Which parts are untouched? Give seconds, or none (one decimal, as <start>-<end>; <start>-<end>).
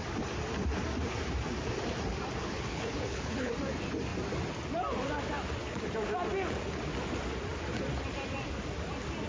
0.0-2.4; 3.5-9.3